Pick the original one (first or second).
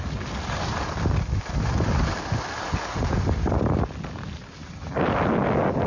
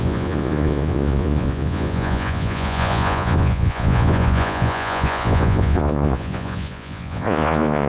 first